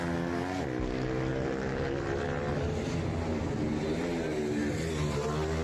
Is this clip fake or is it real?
real